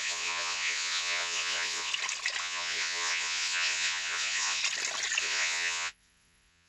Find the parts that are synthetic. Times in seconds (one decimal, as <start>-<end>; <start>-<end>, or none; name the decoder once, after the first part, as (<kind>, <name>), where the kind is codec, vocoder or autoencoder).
0.0-1.9 (vocoder, Vocos); 2.4-4.6; 5.2-6.7